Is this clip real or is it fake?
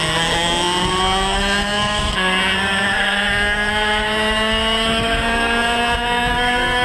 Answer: fake